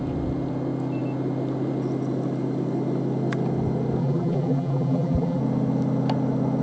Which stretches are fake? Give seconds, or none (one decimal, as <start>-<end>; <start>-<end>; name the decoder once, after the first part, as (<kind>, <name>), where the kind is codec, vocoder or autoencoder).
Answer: 4.0-5.4 (vocoder, BigVGAN v2)